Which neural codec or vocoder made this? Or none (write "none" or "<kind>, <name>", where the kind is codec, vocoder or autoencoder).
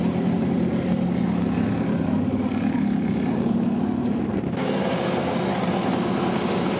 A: none